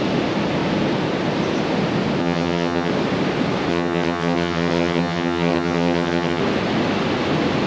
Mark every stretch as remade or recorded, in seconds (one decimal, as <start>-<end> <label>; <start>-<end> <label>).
0.0-2.2 recorded; 2.2-2.9 remade; 2.9-3.7 recorded; 3.7-6.4 remade; 6.4-7.7 recorded